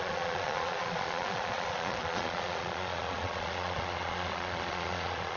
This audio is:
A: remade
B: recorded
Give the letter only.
A